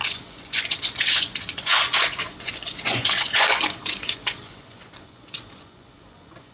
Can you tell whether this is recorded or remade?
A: remade